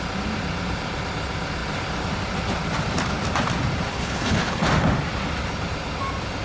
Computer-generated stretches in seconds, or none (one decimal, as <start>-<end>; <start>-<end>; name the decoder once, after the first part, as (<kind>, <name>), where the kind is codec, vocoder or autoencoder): 3.9-4.7 (codec, HILCodec)

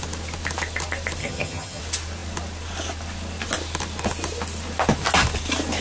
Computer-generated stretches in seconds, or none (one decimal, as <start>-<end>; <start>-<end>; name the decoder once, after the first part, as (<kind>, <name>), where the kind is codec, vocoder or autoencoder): 1.2-1.8 (vocoder, HiFi-GAN)

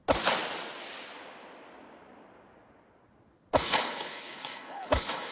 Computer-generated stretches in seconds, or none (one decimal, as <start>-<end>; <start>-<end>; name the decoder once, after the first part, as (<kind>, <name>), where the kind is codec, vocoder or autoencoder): 3.6-5.3 (codec, HILCodec)

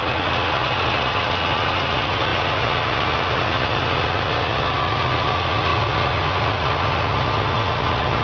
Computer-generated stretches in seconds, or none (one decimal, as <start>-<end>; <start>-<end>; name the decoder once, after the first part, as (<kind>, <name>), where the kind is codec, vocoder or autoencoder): 0.0-8.2 (vocoder, Vocos)

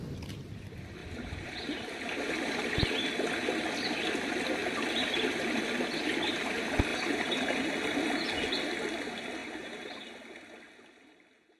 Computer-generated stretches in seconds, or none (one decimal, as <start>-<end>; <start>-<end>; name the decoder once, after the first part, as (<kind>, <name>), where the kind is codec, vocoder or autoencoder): 1.0-2.7 (vocoder, BigVGAN v2); 6.9-7.7; 9.4-10.0

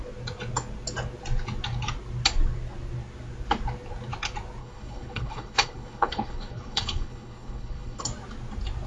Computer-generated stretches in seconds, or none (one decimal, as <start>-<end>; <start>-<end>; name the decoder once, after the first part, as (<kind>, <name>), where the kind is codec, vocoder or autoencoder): 4.6-8.0 (codec, HILCodec)

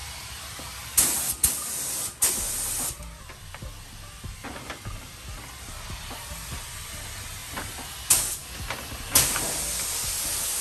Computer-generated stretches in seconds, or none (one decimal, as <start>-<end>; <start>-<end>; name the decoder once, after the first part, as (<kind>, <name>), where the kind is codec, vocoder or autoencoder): none

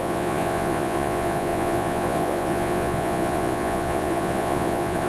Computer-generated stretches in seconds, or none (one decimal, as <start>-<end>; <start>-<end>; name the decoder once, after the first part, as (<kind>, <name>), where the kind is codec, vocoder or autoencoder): 0.0-5.1 (vocoder, Vocos)